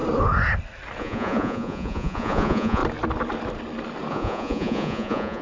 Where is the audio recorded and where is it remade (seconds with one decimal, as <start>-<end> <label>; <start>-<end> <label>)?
0.0-1.0 recorded; 1.0-2.8 remade; 2.8-4.1 recorded; 4.1-5.4 remade